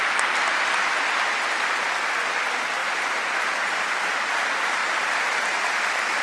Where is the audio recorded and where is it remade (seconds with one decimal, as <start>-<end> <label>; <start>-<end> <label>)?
0.0-4.8 recorded; 4.8-6.2 remade